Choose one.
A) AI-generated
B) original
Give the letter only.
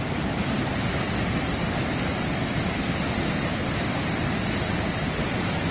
B